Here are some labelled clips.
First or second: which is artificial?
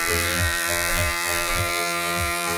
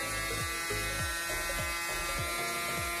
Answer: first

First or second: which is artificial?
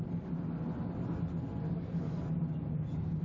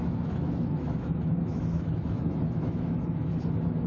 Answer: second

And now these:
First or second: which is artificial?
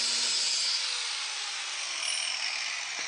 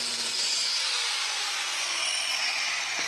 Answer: second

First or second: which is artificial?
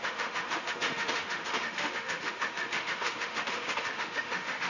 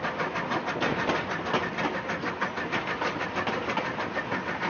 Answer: first